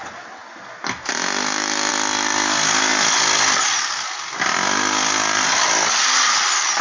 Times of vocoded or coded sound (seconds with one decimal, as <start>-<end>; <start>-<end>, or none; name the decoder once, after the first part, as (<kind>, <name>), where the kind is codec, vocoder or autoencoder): none